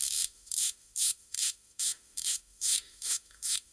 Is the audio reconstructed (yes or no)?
yes